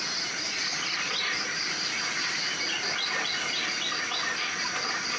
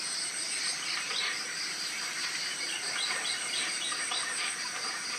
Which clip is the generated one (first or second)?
second